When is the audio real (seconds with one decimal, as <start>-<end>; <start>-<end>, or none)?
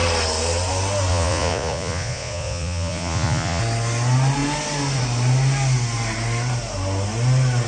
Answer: 0.0-1.1; 3.6-7.7